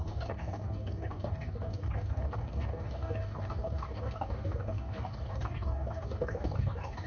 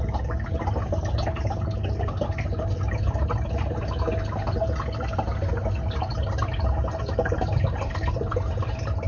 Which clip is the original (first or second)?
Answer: second